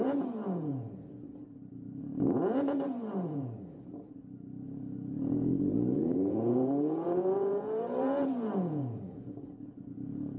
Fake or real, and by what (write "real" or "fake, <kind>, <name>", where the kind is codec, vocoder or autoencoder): fake, vocoder, Vocos